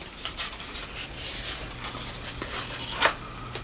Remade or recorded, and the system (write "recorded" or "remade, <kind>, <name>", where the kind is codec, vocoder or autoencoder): recorded